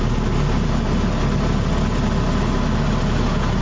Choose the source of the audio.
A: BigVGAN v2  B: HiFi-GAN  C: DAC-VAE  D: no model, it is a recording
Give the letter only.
D